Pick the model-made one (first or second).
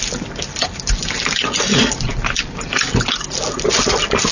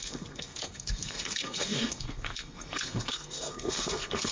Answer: second